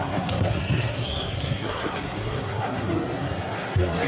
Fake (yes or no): yes